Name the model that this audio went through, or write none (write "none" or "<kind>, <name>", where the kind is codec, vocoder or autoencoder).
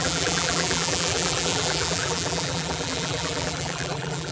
vocoder, BigVGAN v2